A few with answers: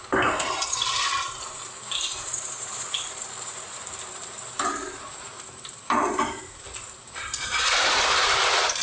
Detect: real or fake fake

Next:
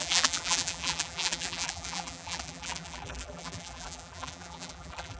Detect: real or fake fake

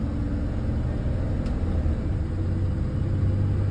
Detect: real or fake real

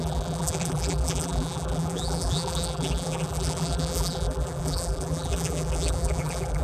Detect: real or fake fake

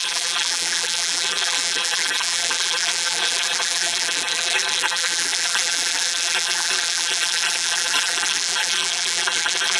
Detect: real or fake fake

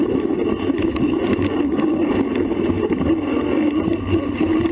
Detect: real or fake real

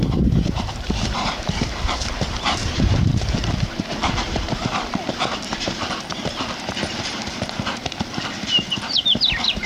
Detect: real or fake fake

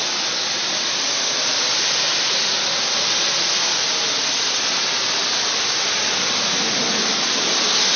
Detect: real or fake real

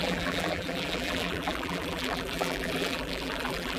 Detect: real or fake fake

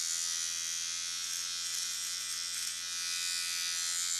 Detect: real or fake real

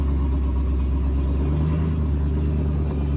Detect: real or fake real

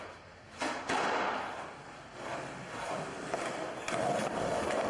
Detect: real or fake real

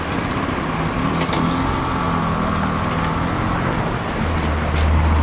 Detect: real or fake real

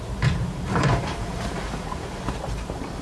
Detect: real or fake fake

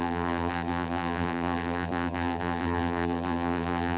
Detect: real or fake fake